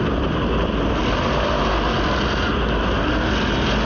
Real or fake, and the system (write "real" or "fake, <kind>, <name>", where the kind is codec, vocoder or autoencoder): real